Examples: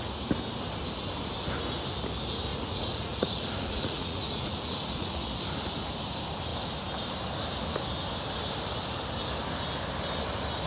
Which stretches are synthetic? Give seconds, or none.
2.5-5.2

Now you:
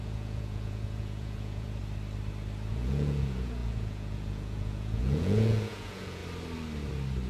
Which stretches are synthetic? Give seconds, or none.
0.0-1.8; 2.7-6.2

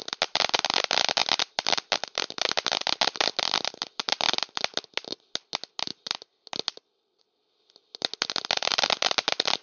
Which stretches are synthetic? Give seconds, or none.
none

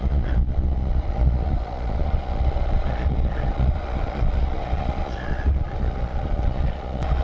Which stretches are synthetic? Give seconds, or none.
0.0-7.2